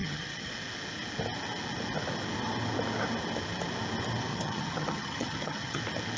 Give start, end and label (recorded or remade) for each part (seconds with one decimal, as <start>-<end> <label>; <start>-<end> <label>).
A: 0.0-0.5 remade; 0.5-4.3 recorded; 4.3-5.8 remade; 5.8-6.2 recorded